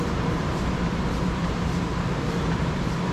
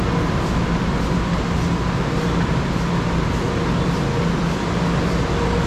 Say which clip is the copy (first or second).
first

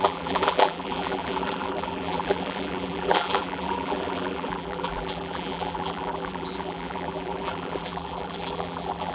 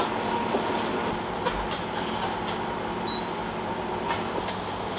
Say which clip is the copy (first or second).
first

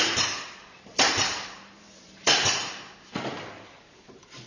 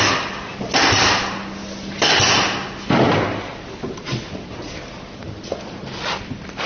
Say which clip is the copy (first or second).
first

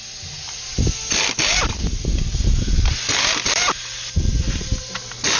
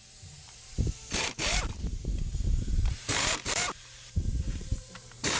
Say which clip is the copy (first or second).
second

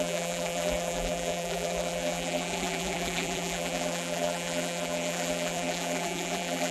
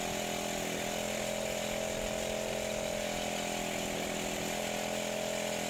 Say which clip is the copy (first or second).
first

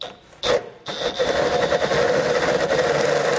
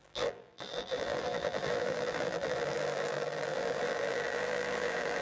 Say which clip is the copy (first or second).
second